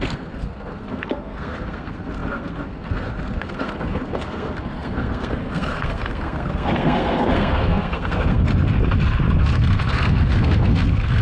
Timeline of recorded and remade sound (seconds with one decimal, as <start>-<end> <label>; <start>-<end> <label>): 0.0-8.5 remade; 8.5-9.4 recorded; 9.4-11.2 remade